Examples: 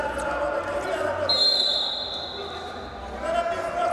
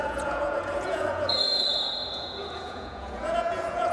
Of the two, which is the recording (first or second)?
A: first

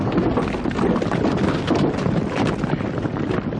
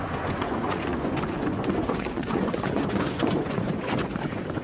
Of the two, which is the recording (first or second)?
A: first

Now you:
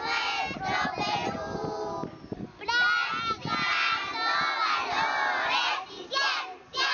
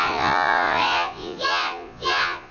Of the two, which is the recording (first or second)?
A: first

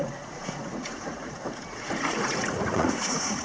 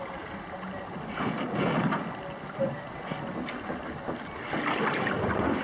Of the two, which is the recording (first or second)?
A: second